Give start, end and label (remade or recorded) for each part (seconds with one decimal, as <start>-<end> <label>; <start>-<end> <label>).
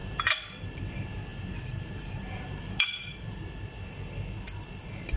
0.0-0.8 remade; 0.8-1.3 recorded; 1.3-3.4 remade; 3.4-5.2 recorded